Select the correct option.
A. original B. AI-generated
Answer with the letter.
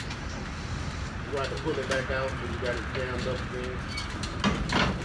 A